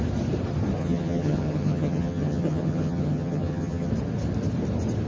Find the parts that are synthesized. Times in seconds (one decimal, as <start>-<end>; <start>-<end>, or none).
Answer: 0.8-3.9

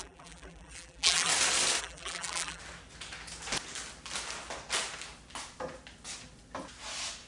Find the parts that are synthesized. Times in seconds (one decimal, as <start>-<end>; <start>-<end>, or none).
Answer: 0.0-1.3; 1.8-2.6